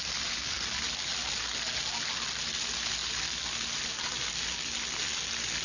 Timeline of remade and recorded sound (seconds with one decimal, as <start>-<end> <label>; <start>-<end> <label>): 0.0-5.6 recorded